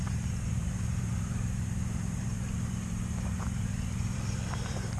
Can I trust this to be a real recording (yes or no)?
no